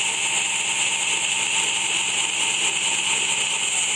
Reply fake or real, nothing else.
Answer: real